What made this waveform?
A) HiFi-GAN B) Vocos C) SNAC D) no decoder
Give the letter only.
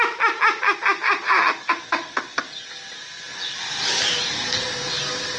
D